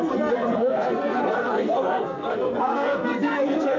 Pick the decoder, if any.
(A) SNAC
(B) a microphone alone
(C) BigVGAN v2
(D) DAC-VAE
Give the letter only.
A